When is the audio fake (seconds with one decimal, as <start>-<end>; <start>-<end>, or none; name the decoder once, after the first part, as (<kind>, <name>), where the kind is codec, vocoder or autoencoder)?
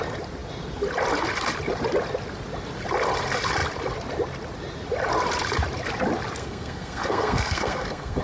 6.4-8.2 (codec, SNAC)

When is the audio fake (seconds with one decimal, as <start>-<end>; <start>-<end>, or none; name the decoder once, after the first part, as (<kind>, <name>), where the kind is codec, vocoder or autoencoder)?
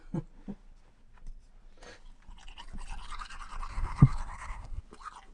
3.7-4.8 (codec, SNAC)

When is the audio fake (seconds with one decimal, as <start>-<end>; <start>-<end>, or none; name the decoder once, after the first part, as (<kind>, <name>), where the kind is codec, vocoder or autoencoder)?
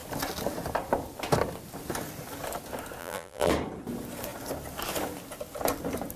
3.0-3.5 (vocoder, BigVGAN v2)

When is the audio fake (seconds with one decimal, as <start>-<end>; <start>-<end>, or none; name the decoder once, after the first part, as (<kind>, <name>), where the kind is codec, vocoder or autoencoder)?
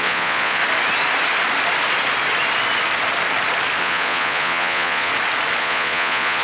0.0-0.6 (vocoder, Vocos); 3.8-5.1; 5.6-6.4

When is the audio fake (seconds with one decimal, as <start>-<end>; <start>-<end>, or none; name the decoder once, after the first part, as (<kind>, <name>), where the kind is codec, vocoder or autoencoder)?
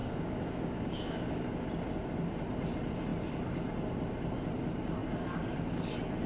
0.0-1.7 (codec, DAC)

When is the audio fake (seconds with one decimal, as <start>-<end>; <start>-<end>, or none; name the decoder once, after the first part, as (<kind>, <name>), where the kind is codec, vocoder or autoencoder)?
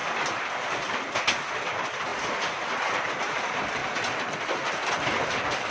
none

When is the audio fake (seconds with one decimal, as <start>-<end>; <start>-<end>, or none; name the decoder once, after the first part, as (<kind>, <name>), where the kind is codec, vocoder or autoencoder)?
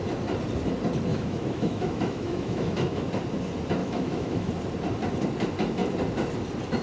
1.1-3.0 (autoencoder, DAC-VAE); 3.8-4.5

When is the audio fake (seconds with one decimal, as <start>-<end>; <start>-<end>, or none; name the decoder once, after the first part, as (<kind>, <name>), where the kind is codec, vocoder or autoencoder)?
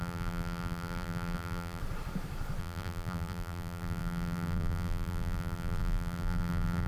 0.0-1.8 (vocoder, BigVGAN v2); 2.6-6.9